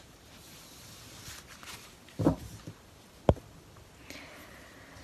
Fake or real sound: real